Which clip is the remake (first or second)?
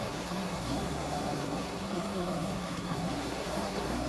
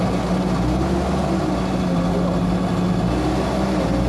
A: first